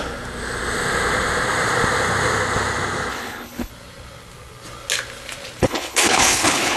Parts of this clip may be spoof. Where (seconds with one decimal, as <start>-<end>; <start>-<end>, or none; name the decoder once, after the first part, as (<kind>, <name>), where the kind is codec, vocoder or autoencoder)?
3.1-3.7 (codec, HILCodec); 5.6-6.8